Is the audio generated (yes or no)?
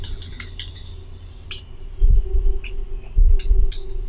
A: no